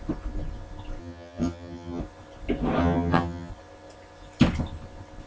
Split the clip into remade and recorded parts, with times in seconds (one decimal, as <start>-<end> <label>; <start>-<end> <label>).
0.0-1.0 recorded; 1.0-2.0 remade; 2.0-2.8 recorded; 2.8-3.5 remade; 3.5-5.3 recorded